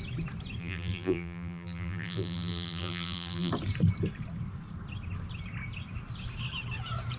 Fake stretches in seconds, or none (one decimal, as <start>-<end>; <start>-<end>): 0.6-3.5